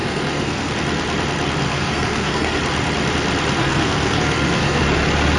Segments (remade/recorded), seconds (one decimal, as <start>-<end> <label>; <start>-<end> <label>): 0.0-0.7 remade; 0.7-1.7 recorded; 1.7-2.6 remade; 2.6-3.6 recorded; 3.6-4.8 remade; 4.8-5.4 recorded